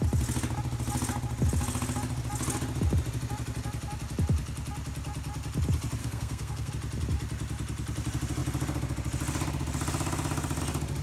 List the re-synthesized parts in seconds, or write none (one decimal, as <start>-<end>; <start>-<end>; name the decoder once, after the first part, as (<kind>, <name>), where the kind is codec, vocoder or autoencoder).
6.0-6.7 (codec, SNAC)